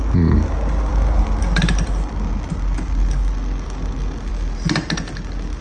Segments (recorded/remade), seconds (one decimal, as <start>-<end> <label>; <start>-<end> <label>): 0.0-5.6 recorded